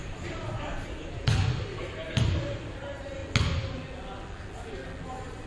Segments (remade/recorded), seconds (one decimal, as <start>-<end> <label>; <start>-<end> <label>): 0.0-3.2 remade; 3.2-5.1 recorded; 5.1-5.5 remade